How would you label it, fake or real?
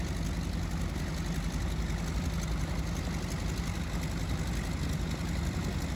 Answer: real